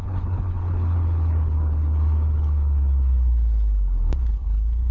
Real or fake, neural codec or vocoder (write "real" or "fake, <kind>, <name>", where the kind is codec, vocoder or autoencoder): fake, codec, HILCodec